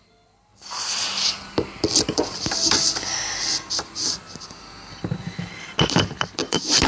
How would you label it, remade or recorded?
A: recorded